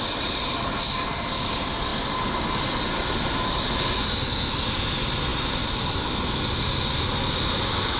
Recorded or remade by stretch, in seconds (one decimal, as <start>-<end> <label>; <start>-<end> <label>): 0.0-8.0 recorded